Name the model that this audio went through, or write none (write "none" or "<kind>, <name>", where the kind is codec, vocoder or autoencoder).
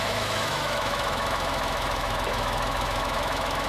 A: autoencoder, DAC-VAE